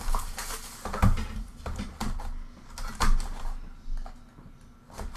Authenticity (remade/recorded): recorded